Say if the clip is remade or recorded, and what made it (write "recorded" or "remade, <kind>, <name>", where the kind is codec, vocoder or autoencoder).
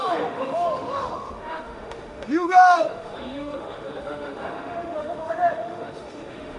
remade, autoencoder, DAC-VAE